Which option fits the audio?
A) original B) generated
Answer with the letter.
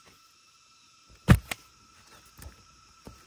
A